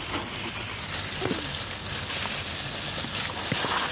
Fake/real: real